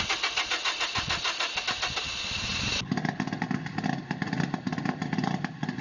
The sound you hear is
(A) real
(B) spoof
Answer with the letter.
A